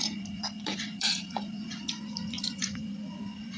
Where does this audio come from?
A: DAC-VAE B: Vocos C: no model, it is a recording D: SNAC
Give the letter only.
B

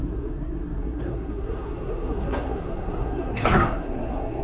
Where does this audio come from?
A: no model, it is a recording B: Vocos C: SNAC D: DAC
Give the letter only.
C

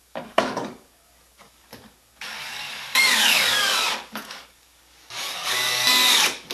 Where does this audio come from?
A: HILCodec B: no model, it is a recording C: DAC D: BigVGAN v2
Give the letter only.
C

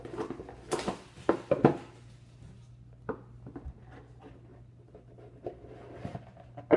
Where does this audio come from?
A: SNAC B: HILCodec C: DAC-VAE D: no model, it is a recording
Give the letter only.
D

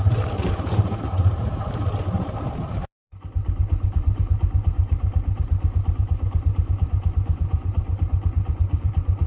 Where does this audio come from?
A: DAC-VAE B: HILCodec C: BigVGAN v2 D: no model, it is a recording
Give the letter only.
C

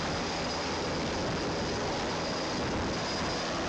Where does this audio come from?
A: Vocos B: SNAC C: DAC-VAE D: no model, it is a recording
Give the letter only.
D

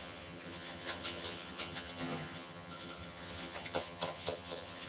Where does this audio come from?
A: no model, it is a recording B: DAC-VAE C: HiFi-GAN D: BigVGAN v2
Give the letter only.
C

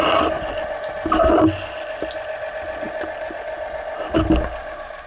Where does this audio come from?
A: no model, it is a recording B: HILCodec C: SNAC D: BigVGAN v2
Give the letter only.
A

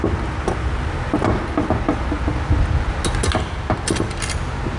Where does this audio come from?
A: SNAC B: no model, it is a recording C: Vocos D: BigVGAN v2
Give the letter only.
B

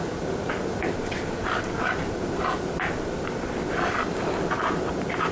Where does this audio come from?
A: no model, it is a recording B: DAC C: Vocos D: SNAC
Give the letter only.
A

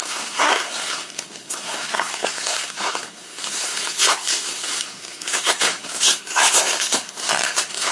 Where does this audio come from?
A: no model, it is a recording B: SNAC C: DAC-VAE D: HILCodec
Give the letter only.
B